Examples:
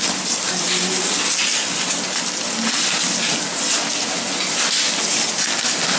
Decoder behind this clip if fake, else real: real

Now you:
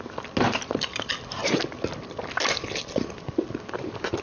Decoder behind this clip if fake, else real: real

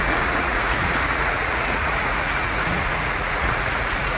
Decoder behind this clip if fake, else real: fake, vocoder, Vocos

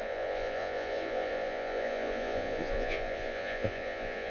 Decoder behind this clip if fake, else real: fake, vocoder, Vocos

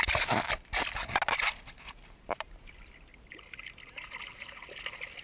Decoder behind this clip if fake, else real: real